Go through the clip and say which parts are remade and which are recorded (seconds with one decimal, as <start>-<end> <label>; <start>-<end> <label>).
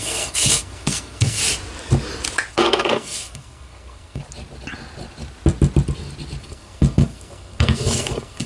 0.0-1.4 remade; 1.4-2.5 recorded; 2.5-4.2 remade; 4.2-6.4 recorded; 6.4-8.5 remade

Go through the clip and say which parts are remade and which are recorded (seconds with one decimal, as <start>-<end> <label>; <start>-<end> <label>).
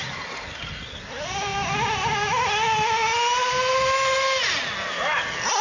0.0-5.6 recorded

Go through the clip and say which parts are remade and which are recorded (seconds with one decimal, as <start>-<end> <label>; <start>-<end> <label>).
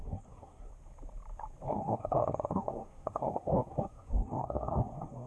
0.0-0.7 remade; 0.7-1.7 recorded; 1.7-5.3 remade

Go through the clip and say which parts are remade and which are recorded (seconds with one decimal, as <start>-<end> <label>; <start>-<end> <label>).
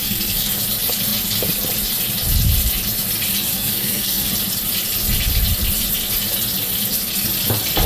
0.0-0.6 remade; 0.6-3.5 recorded; 3.5-4.3 remade; 4.3-7.9 recorded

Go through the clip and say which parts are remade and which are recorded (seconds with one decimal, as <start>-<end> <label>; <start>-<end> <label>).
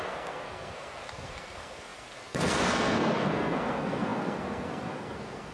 0.0-5.5 remade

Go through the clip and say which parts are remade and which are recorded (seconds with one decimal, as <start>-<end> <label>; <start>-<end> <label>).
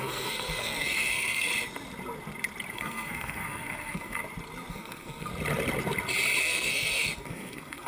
0.0-1.5 remade; 1.5-2.7 recorded; 2.7-4.2 remade; 4.2-4.7 recorded; 4.7-5.3 remade; 5.3-6.4 recorded; 6.4-7.9 remade